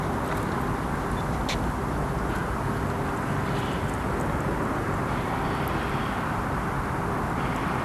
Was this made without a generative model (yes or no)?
yes